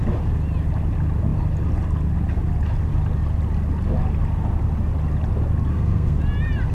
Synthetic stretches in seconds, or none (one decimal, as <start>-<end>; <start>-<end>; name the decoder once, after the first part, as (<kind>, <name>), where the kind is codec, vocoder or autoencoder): 5.7-6.2 (codec, SNAC)